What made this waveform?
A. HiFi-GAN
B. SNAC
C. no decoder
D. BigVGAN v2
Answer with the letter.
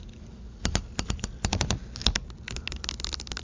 C